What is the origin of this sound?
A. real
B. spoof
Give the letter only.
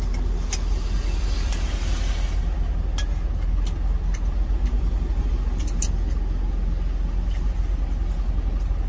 A